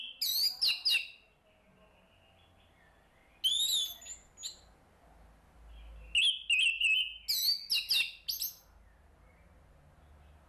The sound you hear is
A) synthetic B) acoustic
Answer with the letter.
B